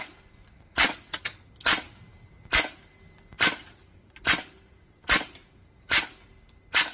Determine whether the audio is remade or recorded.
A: recorded